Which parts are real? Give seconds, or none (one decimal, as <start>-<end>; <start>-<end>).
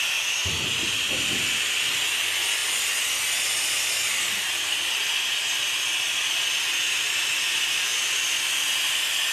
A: 0.0-0.4; 1.6-9.3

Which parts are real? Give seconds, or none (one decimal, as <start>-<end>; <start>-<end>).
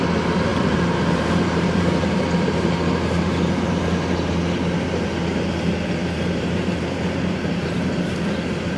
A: 0.0-0.5; 2.2-6.0; 8.1-8.8